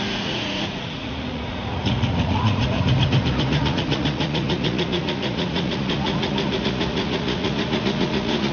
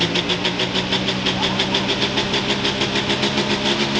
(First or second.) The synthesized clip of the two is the first